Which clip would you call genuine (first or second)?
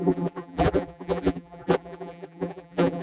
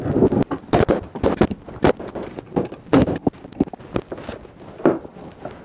second